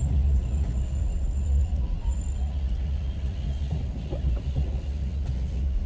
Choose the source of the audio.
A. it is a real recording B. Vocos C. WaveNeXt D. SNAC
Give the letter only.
B